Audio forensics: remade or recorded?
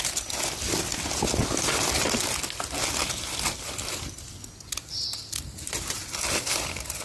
recorded